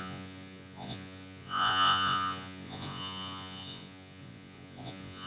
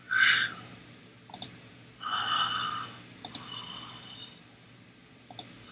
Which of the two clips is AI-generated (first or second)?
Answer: first